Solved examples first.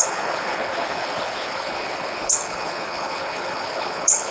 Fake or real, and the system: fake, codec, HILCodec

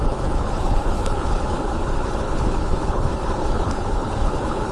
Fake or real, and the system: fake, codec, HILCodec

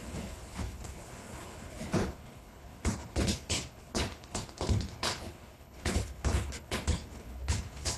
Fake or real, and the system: fake, codec, HILCodec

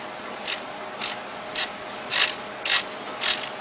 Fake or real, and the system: real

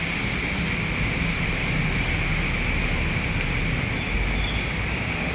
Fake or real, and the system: real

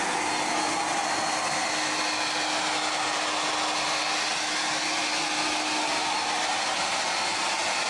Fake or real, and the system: real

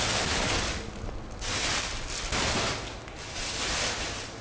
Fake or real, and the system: real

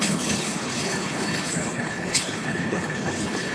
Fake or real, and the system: fake, codec, HILCodec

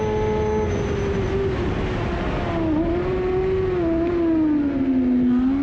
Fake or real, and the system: real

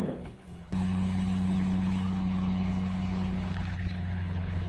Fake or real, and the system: fake, codec, HILCodec